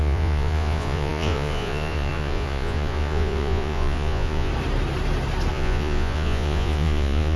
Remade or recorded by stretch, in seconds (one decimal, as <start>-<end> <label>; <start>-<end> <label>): 0.0-4.5 remade; 4.5-5.5 recorded; 5.5-7.4 remade